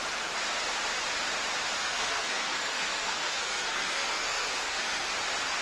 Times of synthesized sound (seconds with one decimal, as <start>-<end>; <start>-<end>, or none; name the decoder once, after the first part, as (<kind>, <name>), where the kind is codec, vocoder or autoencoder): 1.8-5.1 (codec, SNAC)